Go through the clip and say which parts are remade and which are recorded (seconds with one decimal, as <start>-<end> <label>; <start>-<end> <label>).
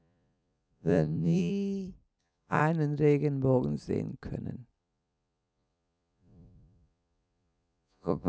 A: 0.0-1.5 remade; 1.5-2.2 recorded; 2.2-2.6 remade; 2.6-4.8 recorded; 4.8-8.3 remade